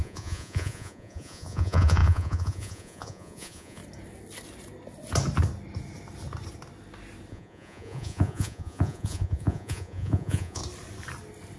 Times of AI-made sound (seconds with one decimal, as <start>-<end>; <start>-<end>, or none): 0.0-3.8; 7.3-10.6